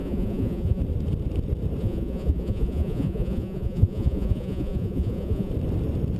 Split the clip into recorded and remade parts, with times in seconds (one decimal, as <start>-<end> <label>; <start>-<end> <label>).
0.0-0.8 remade; 0.8-1.8 recorded; 1.8-5.5 remade; 5.5-6.2 recorded